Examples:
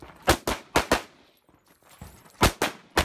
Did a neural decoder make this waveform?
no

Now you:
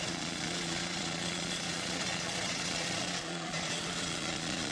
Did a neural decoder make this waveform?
yes